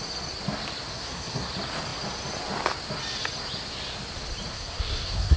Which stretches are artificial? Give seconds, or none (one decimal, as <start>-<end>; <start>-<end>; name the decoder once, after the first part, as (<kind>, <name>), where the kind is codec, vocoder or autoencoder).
0.9-1.5 (codec, SNAC); 4.5-5.4